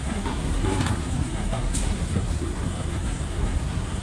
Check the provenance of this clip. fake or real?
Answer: fake